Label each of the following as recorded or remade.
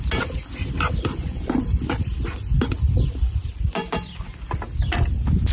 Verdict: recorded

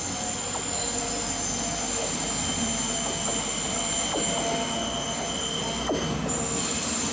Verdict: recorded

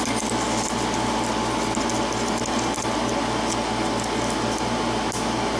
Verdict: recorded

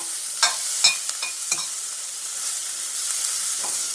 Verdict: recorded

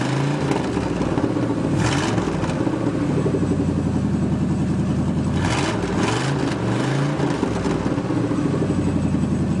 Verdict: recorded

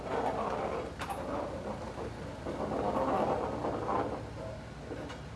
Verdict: recorded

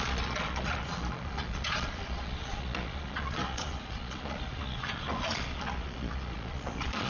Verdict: remade